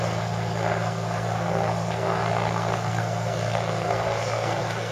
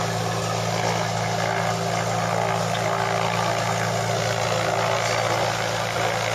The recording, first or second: second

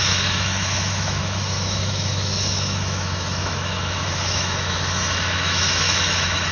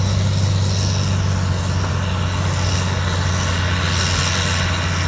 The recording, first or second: second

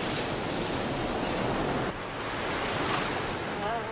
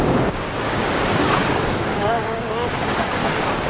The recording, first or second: first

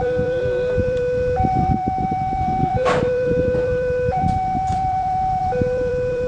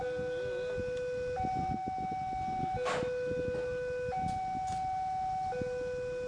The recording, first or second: second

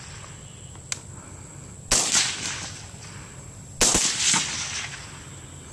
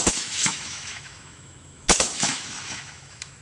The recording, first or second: first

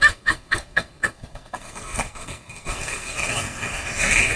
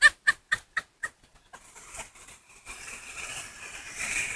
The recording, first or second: second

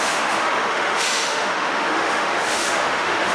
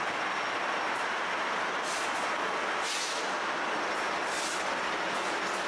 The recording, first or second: second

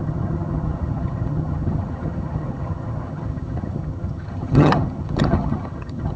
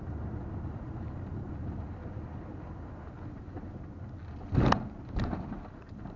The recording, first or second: second